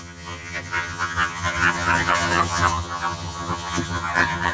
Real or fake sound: fake